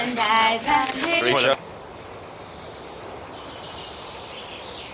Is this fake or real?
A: real